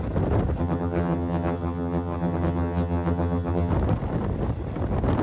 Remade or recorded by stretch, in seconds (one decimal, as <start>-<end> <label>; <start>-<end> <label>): 0.0-0.6 recorded; 0.6-3.7 remade; 3.7-5.2 recorded